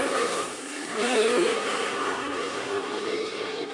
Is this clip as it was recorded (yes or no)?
no